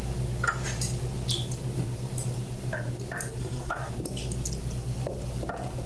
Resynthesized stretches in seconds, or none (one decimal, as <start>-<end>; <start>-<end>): 3.4-3.9